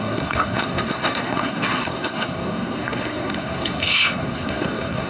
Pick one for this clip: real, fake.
fake